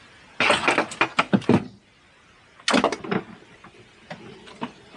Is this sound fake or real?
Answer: real